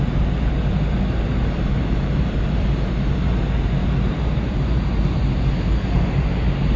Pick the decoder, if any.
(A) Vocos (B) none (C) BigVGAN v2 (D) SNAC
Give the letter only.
C